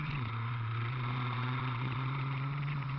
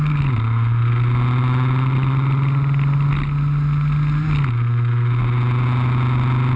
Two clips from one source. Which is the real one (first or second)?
second